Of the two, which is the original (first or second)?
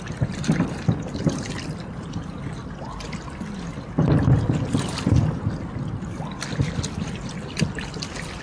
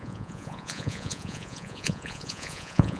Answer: first